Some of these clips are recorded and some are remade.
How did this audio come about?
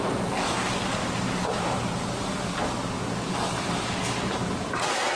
recorded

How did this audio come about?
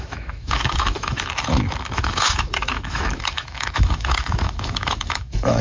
remade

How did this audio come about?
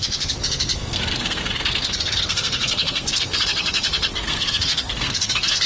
remade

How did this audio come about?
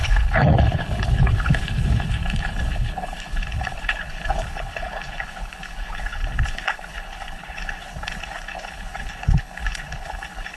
remade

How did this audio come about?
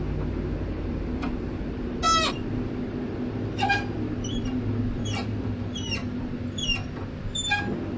recorded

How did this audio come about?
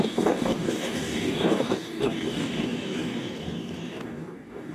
remade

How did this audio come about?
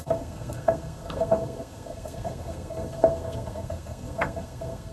remade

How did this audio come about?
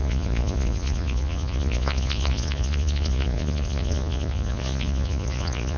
remade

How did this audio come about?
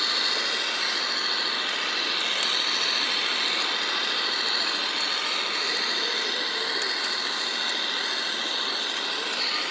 recorded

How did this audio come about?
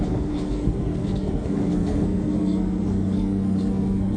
remade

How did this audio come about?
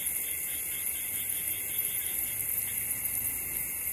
recorded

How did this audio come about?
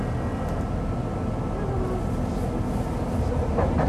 recorded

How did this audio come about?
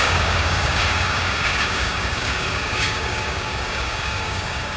remade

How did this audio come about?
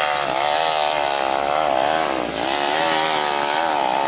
recorded